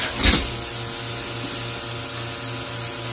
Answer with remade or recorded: recorded